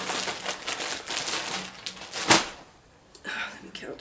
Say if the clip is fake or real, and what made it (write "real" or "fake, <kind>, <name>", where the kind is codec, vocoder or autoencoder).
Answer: real